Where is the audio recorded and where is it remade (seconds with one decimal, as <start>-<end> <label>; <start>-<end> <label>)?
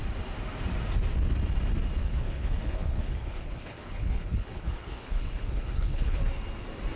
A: 0.0-2.0 recorded; 2.0-6.2 remade; 6.2-7.0 recorded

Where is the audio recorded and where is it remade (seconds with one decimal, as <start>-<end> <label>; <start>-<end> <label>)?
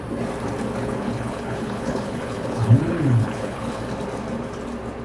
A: 0.0-0.8 recorded; 0.8-3.8 remade; 3.8-5.0 recorded